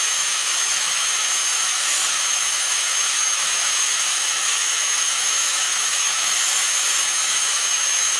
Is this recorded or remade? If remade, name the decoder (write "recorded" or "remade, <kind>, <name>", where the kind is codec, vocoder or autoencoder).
remade, autoencoder, DAC-VAE